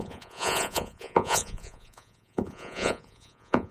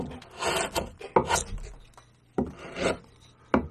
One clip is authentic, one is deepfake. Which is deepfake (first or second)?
first